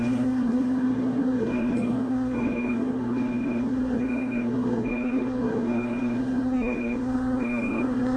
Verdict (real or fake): fake